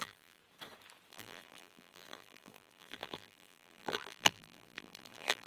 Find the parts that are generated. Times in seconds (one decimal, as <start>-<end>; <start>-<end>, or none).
0.0-0.4; 1.1-5.5